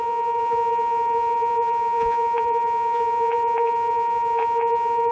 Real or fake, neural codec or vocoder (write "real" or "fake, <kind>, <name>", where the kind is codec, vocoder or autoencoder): fake, vocoder, Vocos